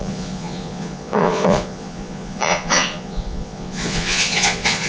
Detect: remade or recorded remade